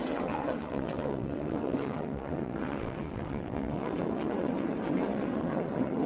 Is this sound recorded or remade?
remade